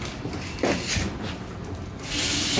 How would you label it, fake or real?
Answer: real